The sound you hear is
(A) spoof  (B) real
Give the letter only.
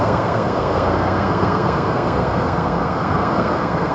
A